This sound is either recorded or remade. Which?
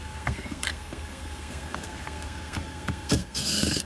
remade